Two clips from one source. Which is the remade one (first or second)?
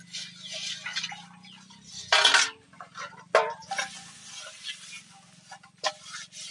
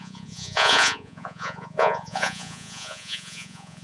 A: second